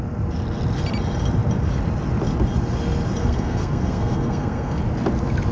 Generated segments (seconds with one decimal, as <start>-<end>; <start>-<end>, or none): 3.2-4.8